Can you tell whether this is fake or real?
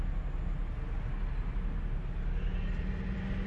real